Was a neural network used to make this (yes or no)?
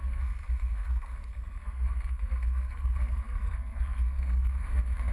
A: yes